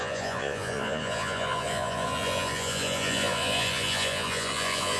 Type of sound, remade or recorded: remade